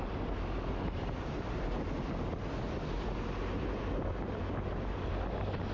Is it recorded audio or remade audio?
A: recorded